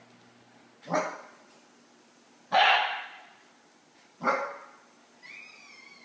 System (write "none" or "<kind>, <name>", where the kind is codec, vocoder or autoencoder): none